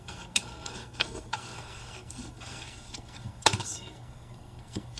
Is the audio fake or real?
fake